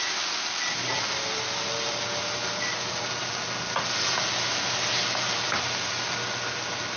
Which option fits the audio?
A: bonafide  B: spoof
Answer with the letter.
A